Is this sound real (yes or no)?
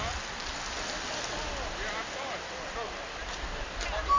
yes